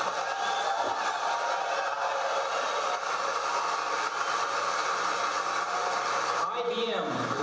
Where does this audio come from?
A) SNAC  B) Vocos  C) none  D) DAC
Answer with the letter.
C